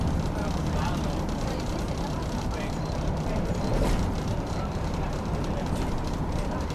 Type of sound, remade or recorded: remade